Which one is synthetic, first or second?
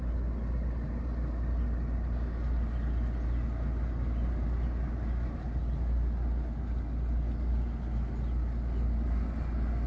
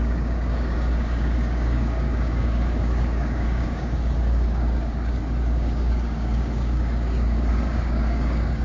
second